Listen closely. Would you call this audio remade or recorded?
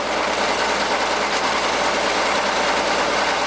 recorded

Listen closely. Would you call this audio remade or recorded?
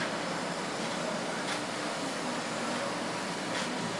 recorded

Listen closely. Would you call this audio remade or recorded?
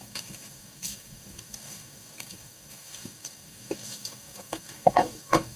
remade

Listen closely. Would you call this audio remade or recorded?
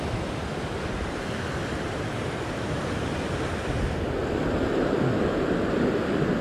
recorded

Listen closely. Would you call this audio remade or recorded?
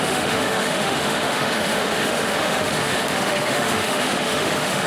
remade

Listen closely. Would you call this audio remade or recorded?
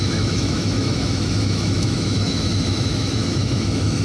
remade